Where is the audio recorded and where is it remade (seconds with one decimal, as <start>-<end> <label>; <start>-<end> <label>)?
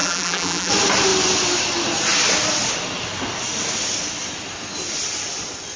0.0-0.7 remade; 0.7-5.8 recorded